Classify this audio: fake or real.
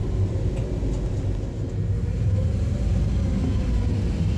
real